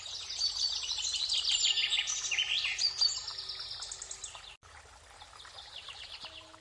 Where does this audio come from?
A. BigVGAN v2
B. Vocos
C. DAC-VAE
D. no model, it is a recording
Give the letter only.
D